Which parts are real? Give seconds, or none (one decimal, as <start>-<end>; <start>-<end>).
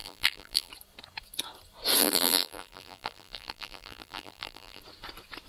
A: 0.7-2.0; 4.8-5.5